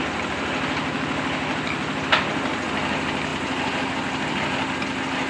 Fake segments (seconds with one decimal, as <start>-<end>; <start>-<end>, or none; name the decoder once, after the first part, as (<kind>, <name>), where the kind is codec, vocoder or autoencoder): none